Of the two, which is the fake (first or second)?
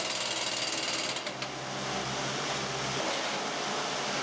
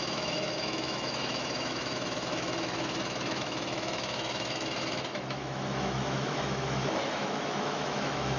second